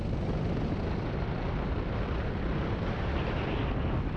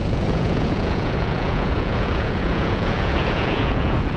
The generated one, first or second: second